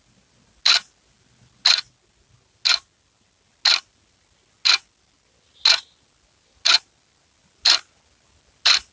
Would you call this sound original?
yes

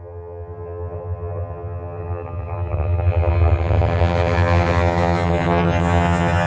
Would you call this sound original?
no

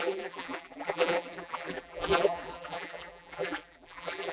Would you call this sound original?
no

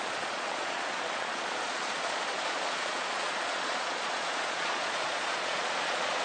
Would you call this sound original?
no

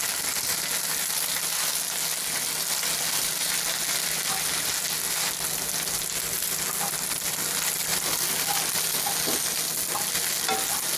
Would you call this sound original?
yes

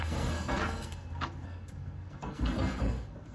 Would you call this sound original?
no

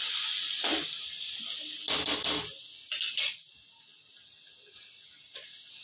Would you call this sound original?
yes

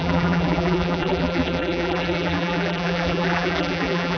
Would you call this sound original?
no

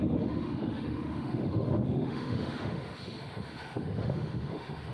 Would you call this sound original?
no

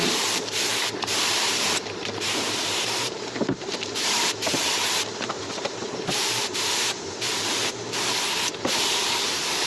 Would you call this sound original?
no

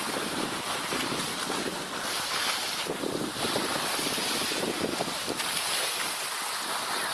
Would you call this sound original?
yes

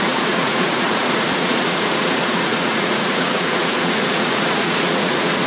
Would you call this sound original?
no